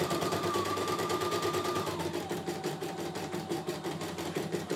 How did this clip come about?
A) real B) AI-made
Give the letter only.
B